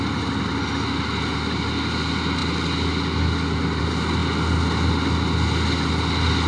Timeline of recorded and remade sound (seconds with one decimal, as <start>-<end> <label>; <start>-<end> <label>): 0.0-6.5 recorded